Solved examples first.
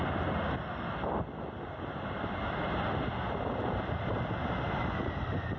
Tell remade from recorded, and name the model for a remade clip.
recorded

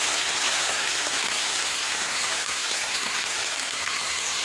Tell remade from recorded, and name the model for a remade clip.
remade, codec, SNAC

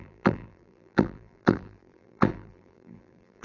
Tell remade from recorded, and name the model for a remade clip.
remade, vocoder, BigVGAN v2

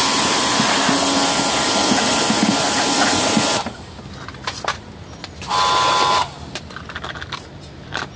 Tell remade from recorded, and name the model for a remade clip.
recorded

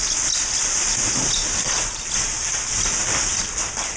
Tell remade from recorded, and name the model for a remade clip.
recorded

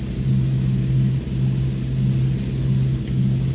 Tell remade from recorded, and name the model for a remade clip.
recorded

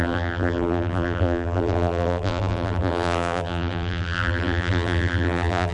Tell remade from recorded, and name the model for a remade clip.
remade, vocoder, BigVGAN v2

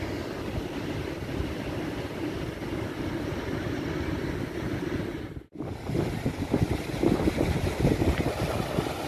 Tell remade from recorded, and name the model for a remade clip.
recorded